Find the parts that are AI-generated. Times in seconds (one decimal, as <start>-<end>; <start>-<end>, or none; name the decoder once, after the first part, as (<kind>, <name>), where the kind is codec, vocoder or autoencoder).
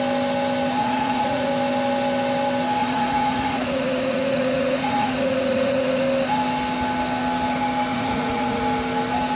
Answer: 0.8-1.5 (vocoder, Vocos); 2.8-6.0; 7.9-8.6